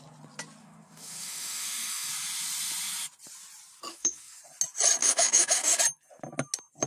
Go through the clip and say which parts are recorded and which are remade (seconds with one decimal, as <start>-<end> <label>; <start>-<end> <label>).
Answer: 0.0-0.6 recorded; 0.6-2.1 remade; 2.1-3.9 recorded; 3.9-4.4 remade; 4.4-5.0 recorded; 5.0-5.8 remade; 5.8-6.9 recorded